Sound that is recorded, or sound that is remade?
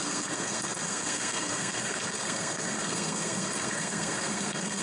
remade